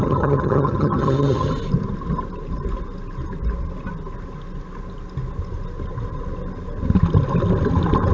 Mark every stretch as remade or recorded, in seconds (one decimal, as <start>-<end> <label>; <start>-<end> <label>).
0.0-1.5 remade; 1.5-8.1 recorded